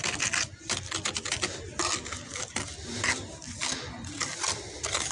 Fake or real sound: real